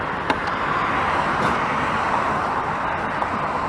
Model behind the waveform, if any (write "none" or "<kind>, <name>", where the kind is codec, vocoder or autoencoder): none